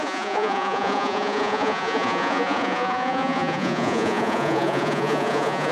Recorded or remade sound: remade